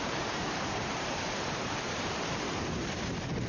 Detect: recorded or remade remade